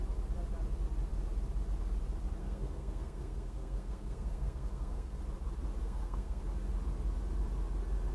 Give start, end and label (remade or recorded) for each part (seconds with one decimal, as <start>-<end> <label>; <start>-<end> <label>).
0.0-2.4 recorded; 2.4-5.2 remade; 5.2-5.8 recorded; 5.8-6.4 remade; 6.4-8.1 recorded